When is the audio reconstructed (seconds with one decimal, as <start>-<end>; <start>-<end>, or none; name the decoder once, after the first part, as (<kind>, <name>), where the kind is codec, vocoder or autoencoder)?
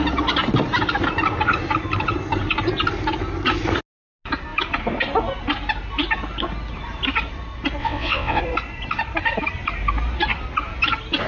7.8-8.4 (vocoder, WaveNeXt)